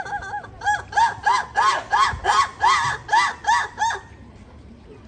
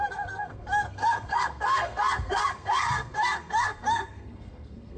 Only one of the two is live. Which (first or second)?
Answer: first